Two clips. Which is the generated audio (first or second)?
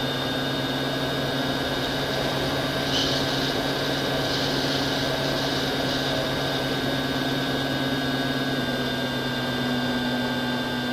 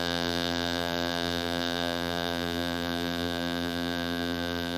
second